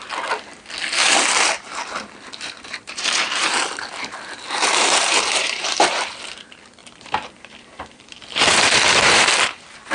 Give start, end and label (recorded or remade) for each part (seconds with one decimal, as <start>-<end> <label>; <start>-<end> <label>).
0.0-1.0 recorded; 1.0-6.2 remade; 6.2-6.8 recorded; 6.8-9.9 remade